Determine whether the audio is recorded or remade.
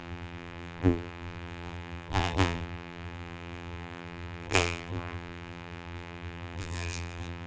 remade